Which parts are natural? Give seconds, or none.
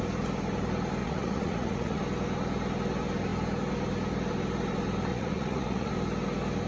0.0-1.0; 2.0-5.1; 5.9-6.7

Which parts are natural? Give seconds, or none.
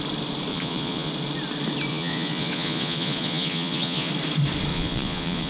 0.0-0.5; 1.1-1.9; 4.1-4.7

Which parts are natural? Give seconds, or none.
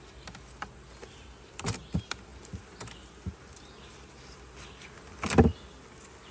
0.0-6.3